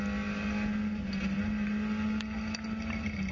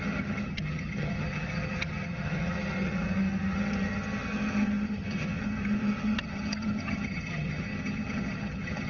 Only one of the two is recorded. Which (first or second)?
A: first